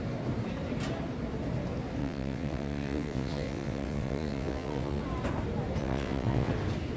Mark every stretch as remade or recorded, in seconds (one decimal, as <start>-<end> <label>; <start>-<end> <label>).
0.0-2.0 recorded; 2.0-5.0 remade; 5.0-5.8 recorded; 5.8-6.5 remade; 6.5-7.0 recorded